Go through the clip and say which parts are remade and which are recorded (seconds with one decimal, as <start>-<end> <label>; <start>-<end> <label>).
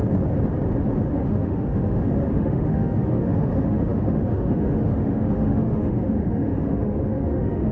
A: 0.0-1.1 recorded; 1.1-7.7 remade